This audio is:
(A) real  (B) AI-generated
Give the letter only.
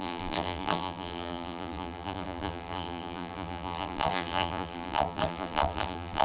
B